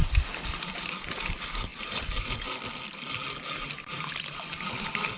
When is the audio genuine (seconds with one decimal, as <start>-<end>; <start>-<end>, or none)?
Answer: 0.0-5.2